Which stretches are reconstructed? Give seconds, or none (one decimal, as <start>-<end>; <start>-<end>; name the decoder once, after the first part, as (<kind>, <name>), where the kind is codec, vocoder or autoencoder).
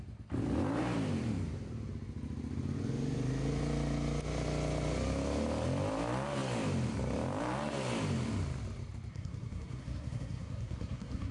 9.1-11.3 (codec, SNAC)